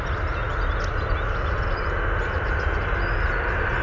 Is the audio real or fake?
real